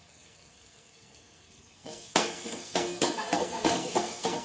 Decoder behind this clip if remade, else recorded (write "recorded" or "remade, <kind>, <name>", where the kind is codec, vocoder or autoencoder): remade, codec, SNAC